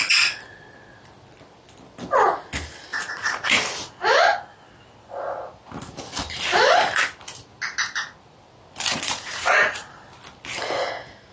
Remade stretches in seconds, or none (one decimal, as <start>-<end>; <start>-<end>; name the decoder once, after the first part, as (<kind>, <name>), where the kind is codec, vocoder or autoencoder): 2.9-3.6 (vocoder, Vocos); 8.9-9.9